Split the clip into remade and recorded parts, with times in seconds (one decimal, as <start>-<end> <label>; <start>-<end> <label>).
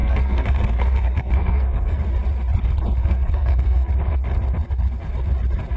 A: 0.0-2.0 remade; 2.0-3.0 recorded; 3.0-3.9 remade; 3.9-5.8 recorded